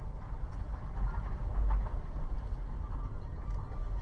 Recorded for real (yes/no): yes